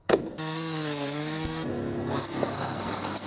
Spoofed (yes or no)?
yes